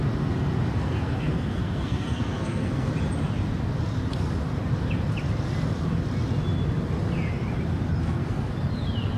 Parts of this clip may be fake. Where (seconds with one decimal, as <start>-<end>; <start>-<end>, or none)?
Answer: 0.7-2.9; 8.0-8.5